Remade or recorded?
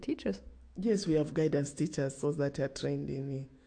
remade